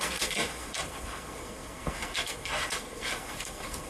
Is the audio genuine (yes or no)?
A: no